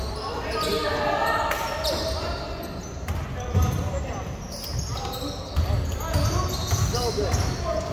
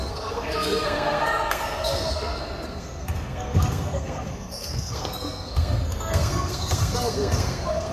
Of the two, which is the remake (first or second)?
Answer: second